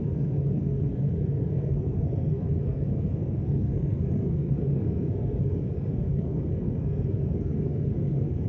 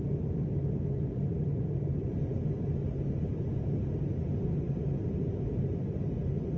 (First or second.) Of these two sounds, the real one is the second